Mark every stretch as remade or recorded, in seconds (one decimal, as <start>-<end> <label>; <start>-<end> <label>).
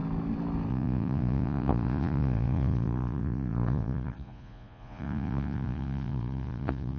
0.0-0.7 recorded; 0.7-7.0 remade